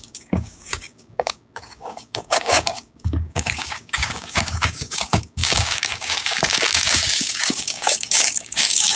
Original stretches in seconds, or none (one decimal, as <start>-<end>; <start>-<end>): none